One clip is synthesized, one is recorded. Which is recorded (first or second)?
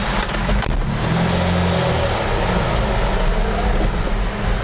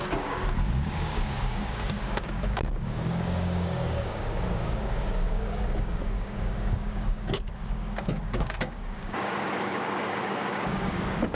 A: first